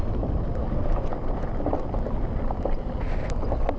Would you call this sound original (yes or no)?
yes